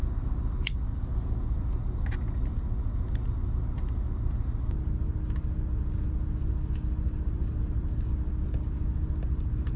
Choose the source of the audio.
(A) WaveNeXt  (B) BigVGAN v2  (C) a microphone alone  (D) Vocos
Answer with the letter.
C